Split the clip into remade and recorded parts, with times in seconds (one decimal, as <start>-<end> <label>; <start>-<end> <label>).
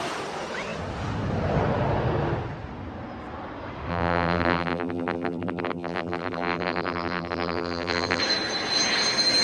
0.0-3.9 recorded; 3.9-8.2 remade; 8.2-9.4 recorded